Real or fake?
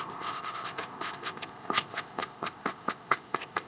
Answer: fake